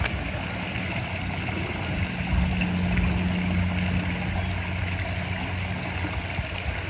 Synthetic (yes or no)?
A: no